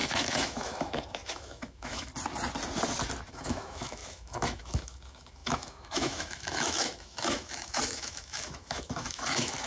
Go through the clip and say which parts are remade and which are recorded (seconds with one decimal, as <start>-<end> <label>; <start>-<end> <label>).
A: 0.0-2.1 remade; 2.1-3.3 recorded; 3.3-9.7 remade